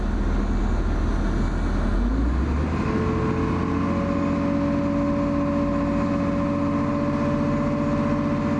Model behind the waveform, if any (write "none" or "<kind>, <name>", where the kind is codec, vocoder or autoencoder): none